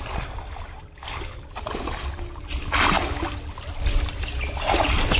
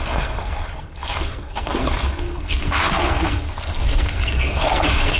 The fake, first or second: second